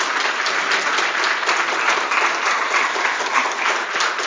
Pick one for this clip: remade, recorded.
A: recorded